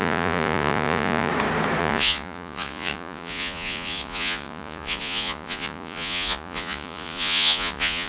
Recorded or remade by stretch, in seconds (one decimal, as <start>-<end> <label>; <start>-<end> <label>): 0.0-1.3 remade; 1.3-1.8 recorded; 1.8-8.1 remade